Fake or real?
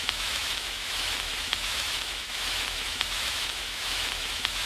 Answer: fake